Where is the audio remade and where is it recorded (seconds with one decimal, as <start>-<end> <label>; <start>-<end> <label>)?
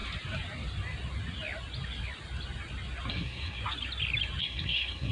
0.0-3.1 recorded; 3.1-3.6 remade; 3.6-4.4 recorded; 4.4-5.1 remade